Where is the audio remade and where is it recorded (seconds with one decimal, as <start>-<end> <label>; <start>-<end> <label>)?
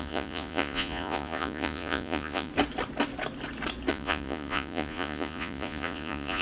0.0-2.5 remade; 2.5-3.9 recorded; 3.9-6.4 remade